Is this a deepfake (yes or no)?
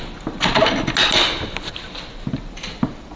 no